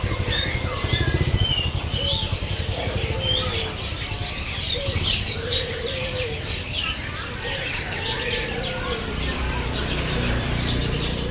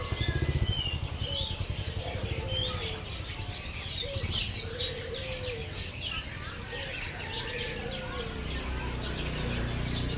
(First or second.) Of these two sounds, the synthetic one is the first